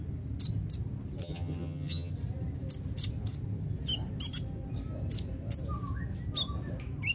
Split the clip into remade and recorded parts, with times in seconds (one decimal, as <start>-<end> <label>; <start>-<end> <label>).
0.0-1.2 recorded; 1.2-2.1 remade; 2.1-7.1 recorded